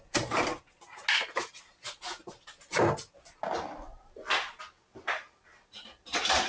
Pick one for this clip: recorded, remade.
recorded